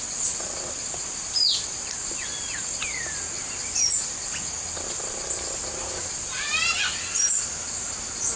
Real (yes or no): no